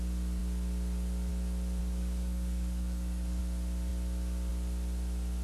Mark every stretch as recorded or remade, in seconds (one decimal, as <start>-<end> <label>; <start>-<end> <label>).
0.0-1.8 recorded; 1.8-3.4 remade; 3.4-5.4 recorded